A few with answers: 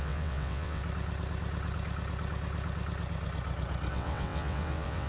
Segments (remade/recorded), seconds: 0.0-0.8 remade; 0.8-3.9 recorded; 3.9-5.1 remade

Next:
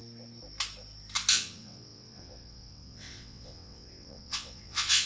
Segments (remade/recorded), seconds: 0.0-1.3 recorded; 1.3-5.1 remade

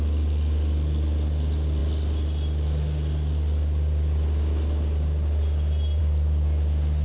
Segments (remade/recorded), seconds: 0.0-7.0 recorded

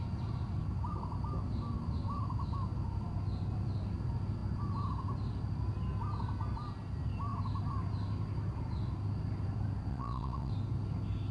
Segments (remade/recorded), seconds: 0.0-9.9 recorded; 9.9-10.5 remade; 10.5-11.3 recorded

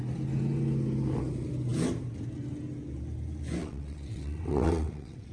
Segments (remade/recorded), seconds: 0.0-3.6 recorded; 3.6-5.3 remade

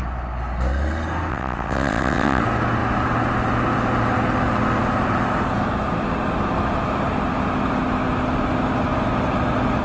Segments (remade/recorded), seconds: 0.0-1.3 recorded; 1.3-2.4 remade; 2.4-9.8 recorded